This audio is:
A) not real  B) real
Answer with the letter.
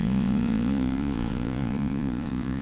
A